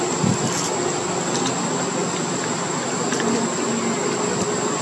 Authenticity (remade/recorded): recorded